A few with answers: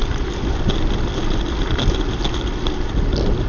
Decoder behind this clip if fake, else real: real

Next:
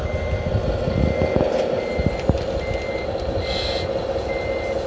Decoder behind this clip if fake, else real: real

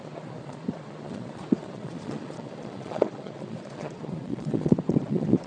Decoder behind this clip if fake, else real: fake, vocoder, Vocos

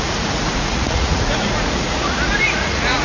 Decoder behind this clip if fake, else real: fake, vocoder, Vocos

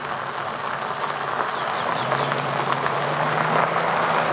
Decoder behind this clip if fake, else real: real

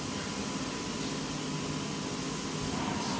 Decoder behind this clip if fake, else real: real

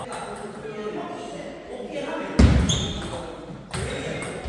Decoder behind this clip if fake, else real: real